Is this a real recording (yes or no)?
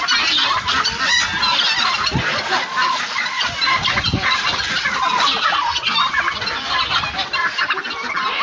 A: yes